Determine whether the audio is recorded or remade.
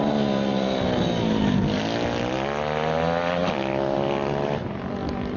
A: recorded